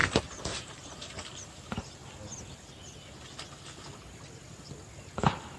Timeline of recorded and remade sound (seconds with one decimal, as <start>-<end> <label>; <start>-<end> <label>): 0.0-2.0 remade; 2.0-5.6 recorded